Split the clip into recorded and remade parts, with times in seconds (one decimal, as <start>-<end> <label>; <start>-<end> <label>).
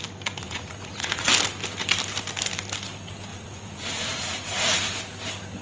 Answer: 0.0-0.4 recorded; 0.4-1.3 remade; 1.3-3.3 recorded; 3.3-5.0 remade; 5.0-5.6 recorded